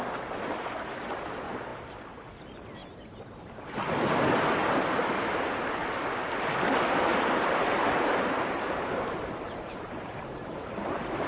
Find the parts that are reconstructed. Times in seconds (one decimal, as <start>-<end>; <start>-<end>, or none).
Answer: 2.8-3.5; 7.1-10.7

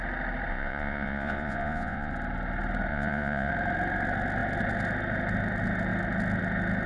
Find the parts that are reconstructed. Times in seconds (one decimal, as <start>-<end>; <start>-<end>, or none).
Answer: 0.5-2.1; 2.9-3.5

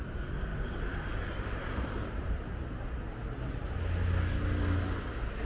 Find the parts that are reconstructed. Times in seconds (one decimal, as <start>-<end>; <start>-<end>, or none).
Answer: 0.5-3.7

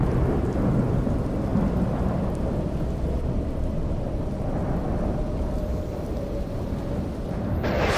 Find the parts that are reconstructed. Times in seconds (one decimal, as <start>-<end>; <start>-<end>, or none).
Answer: none

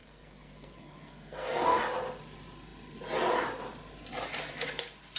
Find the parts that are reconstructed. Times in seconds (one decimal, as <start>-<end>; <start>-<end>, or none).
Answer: 0.0-1.8